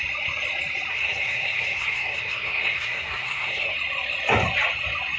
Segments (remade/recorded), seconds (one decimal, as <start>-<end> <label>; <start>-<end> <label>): 0.0-0.9 recorded; 0.9-3.7 remade; 3.7-5.2 recorded